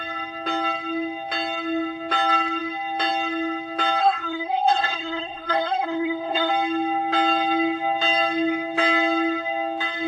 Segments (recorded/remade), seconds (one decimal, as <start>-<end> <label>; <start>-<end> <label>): 0.0-4.0 recorded; 4.0-6.5 remade; 6.5-10.1 recorded